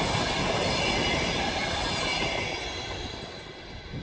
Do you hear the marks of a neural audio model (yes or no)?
no